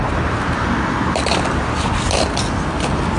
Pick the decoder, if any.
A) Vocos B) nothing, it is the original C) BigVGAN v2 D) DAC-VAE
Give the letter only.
B